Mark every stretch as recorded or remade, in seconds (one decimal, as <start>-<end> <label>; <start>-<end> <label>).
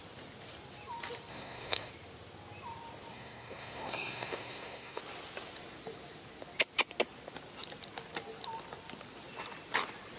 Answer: 0.0-1.3 recorded; 1.3-1.9 remade; 1.9-3.1 recorded; 3.1-5.0 remade; 5.0-10.2 recorded